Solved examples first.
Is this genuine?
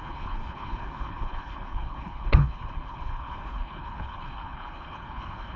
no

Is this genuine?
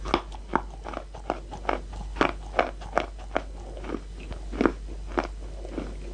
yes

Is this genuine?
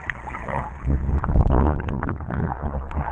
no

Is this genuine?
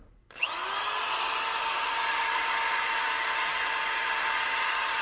yes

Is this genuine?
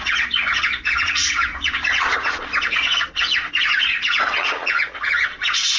no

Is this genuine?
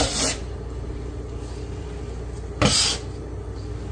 yes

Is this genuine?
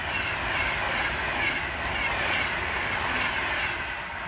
yes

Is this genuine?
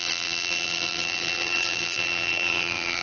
no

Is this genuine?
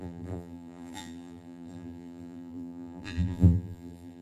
no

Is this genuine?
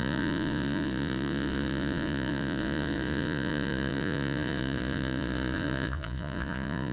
no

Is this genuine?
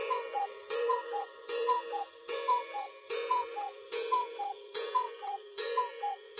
no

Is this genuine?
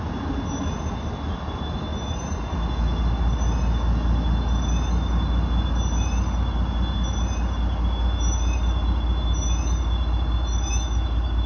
yes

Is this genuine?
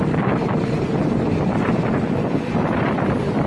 yes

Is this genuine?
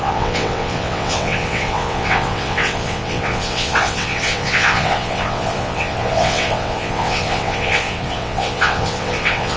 no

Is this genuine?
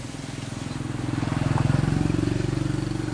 yes